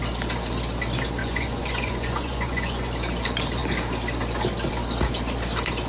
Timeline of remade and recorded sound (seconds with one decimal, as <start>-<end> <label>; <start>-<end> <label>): 0.0-1.2 recorded; 1.2-2.9 remade; 2.9-5.9 recorded